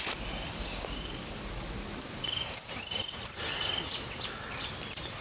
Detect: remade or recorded recorded